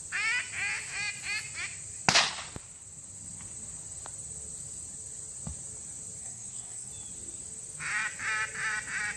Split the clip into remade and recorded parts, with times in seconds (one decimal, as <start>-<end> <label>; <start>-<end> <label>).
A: 0.0-6.2 recorded; 6.2-6.9 remade; 6.9-9.2 recorded